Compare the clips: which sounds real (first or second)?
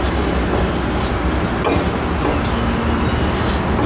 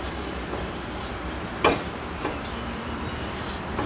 first